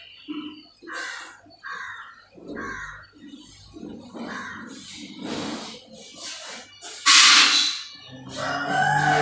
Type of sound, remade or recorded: recorded